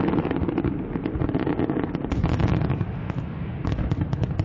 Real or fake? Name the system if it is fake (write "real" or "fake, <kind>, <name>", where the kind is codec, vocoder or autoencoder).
real